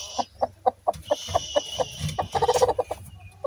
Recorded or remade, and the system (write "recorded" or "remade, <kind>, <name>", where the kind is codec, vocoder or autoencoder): recorded